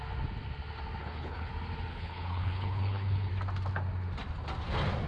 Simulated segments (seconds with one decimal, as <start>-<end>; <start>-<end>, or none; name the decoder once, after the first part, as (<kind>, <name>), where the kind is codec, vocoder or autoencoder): 1.0-1.5 (codec, HILCodec); 1.9-3.3